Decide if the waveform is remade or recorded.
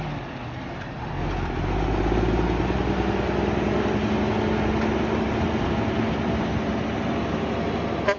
recorded